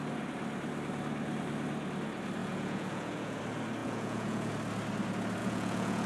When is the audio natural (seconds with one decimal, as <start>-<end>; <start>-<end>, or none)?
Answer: 0.0-2.4; 3.4-3.8; 4.5-5.4

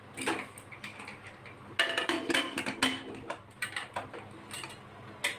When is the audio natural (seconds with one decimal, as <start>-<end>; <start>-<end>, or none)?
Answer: 0.0-5.4

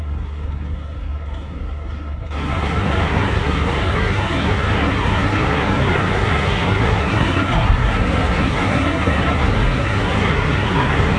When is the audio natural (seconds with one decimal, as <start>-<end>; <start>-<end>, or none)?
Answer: none

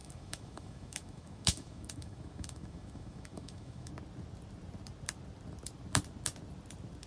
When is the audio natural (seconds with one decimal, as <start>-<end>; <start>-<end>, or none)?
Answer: 3.9-7.1

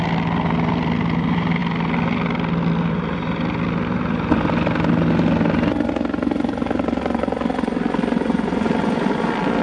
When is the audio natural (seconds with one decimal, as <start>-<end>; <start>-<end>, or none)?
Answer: 0.0-9.6